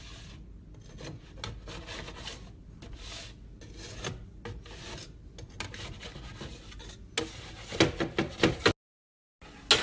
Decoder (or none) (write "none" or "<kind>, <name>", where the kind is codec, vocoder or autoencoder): none